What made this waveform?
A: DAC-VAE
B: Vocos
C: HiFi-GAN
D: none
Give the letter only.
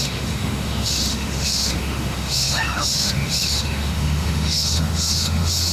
A